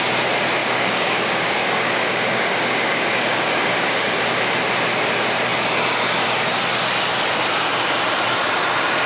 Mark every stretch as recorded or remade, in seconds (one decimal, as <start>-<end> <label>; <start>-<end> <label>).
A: 0.0-0.6 recorded; 0.6-4.4 remade; 4.4-9.1 recorded